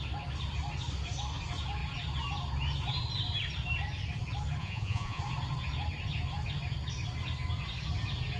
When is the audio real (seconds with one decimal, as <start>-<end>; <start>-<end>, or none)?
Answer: 0.0-4.6; 5.2-8.4